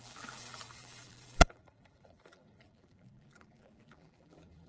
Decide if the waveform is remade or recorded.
remade